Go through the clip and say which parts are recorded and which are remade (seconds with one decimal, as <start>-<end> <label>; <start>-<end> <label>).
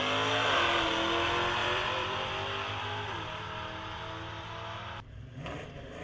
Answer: 0.0-1.6 recorded; 1.6-2.9 remade; 2.9-6.0 recorded